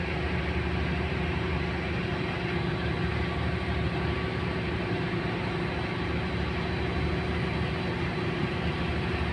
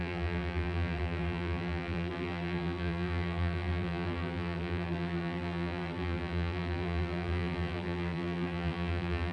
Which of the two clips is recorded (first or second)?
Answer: first